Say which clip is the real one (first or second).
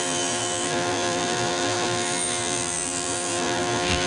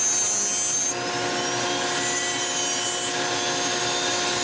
second